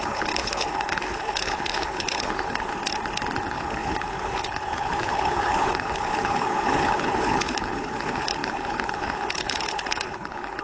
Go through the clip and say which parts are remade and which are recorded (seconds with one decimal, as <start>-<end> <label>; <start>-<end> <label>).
0.0-2.7 remade; 2.7-3.4 recorded; 3.4-10.6 remade